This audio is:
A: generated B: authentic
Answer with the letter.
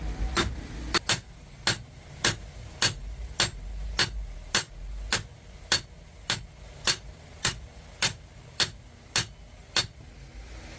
B